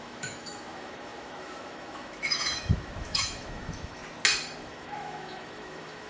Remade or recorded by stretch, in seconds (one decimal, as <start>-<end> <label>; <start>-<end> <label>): 0.0-4.0 remade; 4.0-4.6 recorded; 4.6-6.1 remade